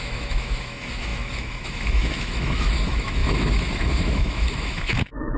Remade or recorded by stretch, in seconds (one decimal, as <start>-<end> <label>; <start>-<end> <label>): 0.0-5.4 remade